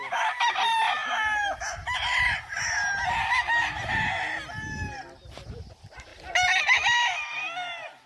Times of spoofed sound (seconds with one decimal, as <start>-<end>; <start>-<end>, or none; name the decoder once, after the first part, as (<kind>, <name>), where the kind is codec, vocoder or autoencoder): none